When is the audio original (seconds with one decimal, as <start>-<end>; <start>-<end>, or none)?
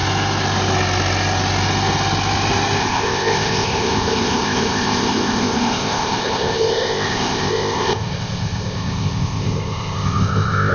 0.0-2.8